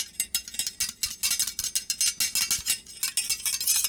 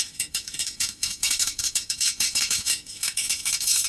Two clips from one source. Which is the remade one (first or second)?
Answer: second